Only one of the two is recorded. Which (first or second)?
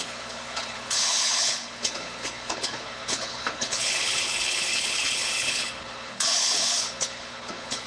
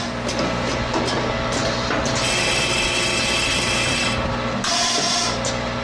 second